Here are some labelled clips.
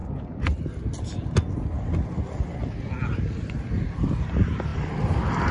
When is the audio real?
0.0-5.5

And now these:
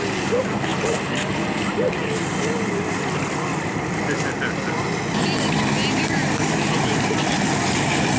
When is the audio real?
0.0-0.7; 4.3-6.2; 7.3-8.2